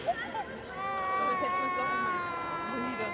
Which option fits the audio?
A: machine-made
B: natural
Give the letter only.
B